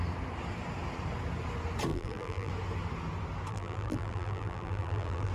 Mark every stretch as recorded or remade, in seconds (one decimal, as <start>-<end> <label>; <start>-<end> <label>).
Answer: 0.0-1.9 recorded; 1.9-2.5 remade; 2.5-3.5 recorded; 3.5-5.3 remade